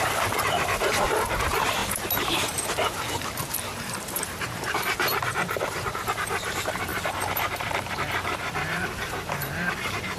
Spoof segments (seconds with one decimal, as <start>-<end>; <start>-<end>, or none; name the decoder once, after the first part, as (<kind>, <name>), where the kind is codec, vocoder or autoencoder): 0.0-10.2 (vocoder, BigVGAN v2)